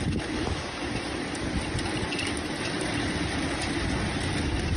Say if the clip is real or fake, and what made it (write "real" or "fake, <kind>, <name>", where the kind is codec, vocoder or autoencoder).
real